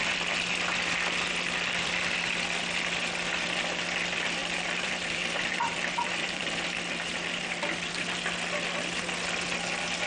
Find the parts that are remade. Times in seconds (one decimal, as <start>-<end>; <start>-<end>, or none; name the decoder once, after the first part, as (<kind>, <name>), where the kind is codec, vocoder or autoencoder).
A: 4.4-7.9 (vocoder, BigVGAN v2)